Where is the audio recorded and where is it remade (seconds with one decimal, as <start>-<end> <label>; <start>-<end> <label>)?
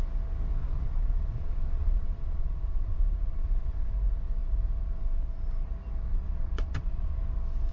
0.0-0.6 recorded; 0.6-3.9 remade; 3.9-6.1 recorded; 6.1-7.2 remade; 7.2-7.7 recorded